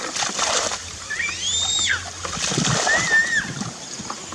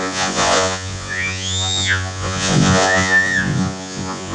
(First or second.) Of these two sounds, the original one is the first